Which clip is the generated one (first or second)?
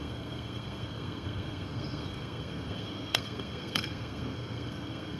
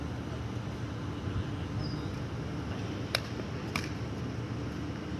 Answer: first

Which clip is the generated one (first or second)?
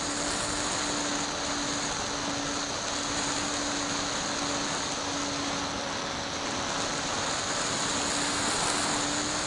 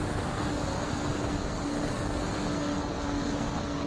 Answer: second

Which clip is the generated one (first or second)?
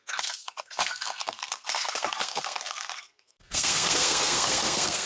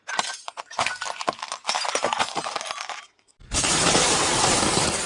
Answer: first